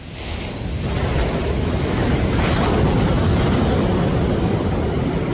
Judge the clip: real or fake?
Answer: real